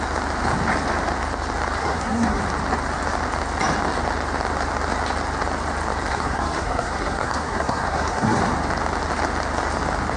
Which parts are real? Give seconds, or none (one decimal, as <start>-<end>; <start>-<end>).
0.0-1.8; 2.4-6.1; 8.4-10.2